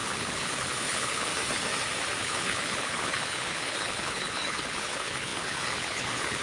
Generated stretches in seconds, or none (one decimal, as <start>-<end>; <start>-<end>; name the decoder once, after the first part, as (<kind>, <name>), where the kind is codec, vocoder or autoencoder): 0.0-1.3 (codec, HILCodec); 2.2-6.4